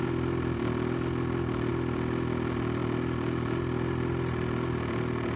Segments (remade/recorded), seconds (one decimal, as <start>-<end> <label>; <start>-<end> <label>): 0.0-5.4 recorded